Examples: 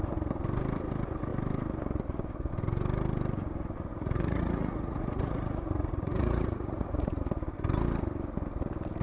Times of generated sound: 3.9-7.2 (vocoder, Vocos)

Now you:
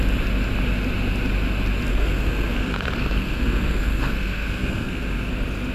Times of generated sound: 1.9-5.3 (codec, SNAC)

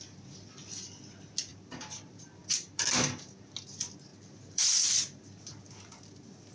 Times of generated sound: 1.5-3.5 (vocoder, BigVGAN v2); 4.1-5.7

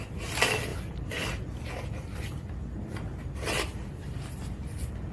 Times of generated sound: 0.7-1.3 (vocoder, BigVGAN v2)

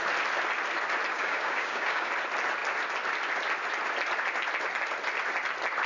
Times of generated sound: 1.1-2.1 (codec, DAC)

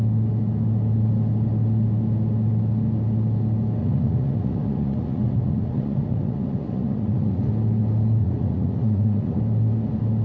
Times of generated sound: 3.8-7.5 (vocoder, Vocos); 8.2-9.4